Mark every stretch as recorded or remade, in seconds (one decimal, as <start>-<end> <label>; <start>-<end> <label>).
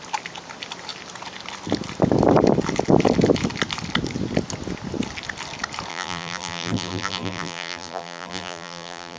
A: 0.0-5.9 recorded; 5.9-9.2 remade